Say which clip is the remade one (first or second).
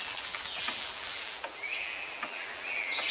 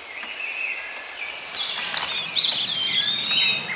first